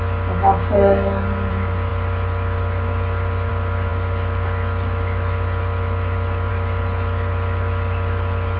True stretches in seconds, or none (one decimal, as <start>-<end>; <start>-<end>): 0.0-0.6; 1.5-8.6